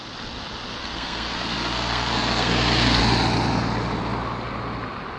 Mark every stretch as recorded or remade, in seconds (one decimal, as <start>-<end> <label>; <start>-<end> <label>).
0.0-0.8 recorded; 0.8-3.0 remade; 3.0-5.2 recorded